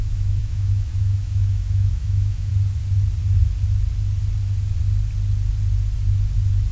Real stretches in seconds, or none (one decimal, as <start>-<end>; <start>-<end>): 2.5-6.7